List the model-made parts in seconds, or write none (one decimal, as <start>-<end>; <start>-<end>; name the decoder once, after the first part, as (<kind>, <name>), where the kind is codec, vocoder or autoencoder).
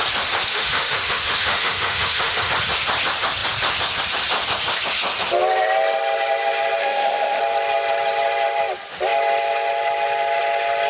0.5-2.5 (autoencoder, DAC-VAE); 6.8-7.4